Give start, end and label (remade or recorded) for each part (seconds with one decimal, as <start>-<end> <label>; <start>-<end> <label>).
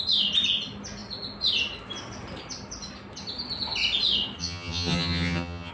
0.0-4.4 recorded; 4.4-5.7 remade